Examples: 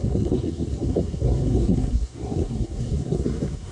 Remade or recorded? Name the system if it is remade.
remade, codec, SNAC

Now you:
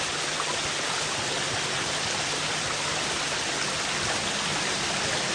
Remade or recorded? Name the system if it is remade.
recorded